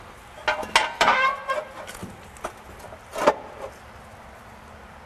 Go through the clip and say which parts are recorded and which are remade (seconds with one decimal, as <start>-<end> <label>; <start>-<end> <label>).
0.0-5.1 recorded